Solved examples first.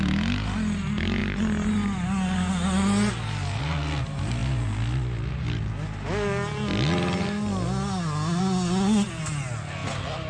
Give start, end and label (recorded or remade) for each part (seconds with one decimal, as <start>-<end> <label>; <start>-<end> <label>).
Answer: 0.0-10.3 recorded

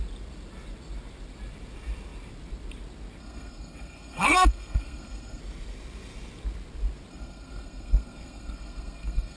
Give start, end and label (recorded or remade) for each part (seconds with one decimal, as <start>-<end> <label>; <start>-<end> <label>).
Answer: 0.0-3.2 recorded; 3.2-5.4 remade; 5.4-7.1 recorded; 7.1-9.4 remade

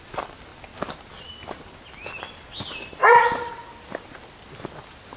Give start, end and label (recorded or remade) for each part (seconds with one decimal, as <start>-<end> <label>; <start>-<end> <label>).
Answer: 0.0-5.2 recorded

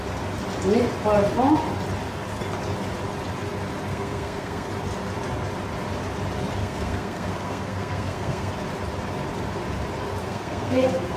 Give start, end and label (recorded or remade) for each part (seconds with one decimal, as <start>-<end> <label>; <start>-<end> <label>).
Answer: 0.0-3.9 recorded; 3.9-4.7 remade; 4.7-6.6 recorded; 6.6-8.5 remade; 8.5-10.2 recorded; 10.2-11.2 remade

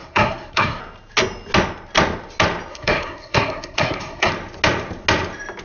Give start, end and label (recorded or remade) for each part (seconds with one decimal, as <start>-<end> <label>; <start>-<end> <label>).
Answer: 0.0-0.8 remade; 0.8-2.7 recorded; 2.7-4.3 remade; 4.3-5.6 recorded